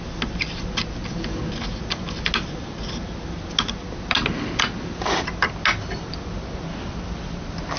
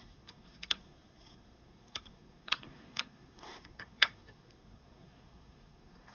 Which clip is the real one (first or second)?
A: first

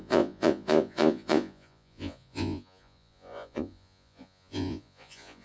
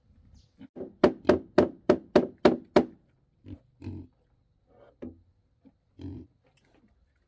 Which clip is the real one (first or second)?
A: second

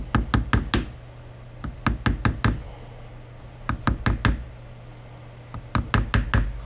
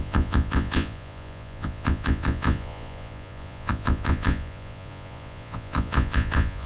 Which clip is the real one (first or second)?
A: first